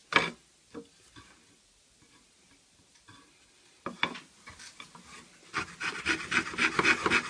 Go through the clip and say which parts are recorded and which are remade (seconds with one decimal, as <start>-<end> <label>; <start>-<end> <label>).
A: 0.0-7.3 recorded